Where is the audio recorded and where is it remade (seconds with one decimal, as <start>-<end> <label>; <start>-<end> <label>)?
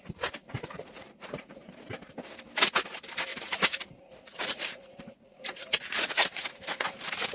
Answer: 0.0-0.4 recorded; 0.4-1.9 remade; 1.9-3.3 recorded; 3.3-7.3 remade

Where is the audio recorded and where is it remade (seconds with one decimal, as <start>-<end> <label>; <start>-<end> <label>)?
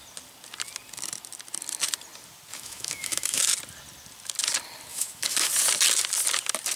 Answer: 0.0-2.5 recorded; 2.5-3.4 remade; 3.4-4.9 recorded; 4.9-5.5 remade; 5.5-6.8 recorded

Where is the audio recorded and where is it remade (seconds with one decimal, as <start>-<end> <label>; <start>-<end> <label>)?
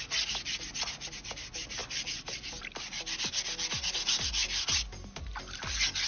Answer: 0.0-6.1 recorded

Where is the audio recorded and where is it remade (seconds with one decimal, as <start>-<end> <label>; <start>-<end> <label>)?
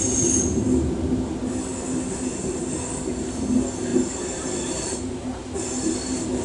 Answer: 0.0-6.4 recorded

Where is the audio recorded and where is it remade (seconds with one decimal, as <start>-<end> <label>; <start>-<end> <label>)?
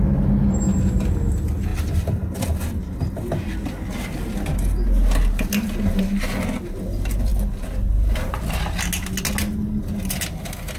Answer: 0.0-10.8 recorded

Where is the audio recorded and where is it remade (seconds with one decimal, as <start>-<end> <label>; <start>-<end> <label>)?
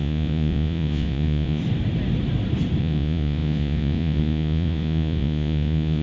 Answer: 0.0-1.6 remade; 1.6-2.8 recorded; 2.8-6.0 remade